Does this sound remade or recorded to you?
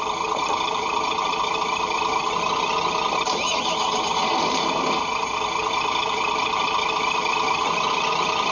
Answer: recorded